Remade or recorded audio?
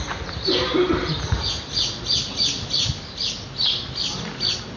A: recorded